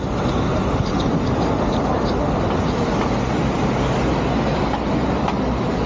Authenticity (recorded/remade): recorded